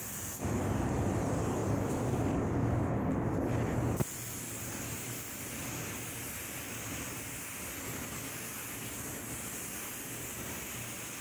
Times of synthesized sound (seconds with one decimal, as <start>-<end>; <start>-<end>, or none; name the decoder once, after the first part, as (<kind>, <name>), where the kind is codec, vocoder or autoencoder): none